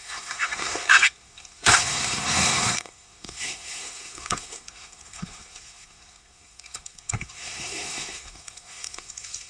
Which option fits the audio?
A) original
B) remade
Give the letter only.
B